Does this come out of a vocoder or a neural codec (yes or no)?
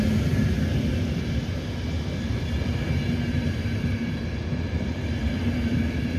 no